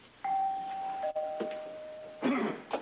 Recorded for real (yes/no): yes